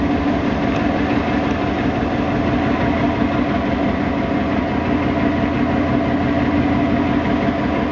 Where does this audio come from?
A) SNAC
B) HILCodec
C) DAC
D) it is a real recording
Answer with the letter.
D